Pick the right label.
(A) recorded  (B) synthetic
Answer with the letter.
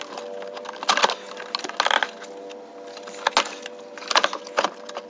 A